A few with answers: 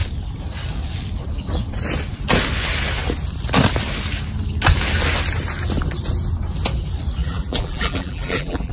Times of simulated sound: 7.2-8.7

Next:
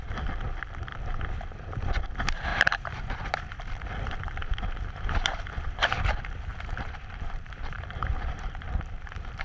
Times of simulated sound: 2.5-3.6; 4.4-5.5; 6.5-8.8

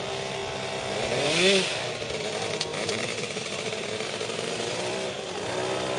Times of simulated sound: 2.7-6.0

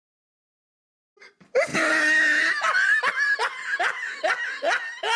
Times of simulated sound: none

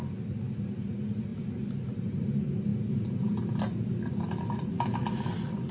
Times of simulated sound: 1.3-2.1

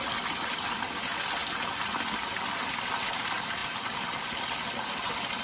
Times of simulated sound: none

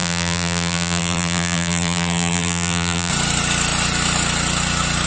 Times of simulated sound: 0.0-3.1

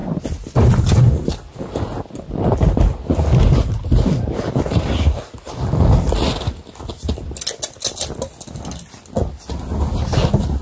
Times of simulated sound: none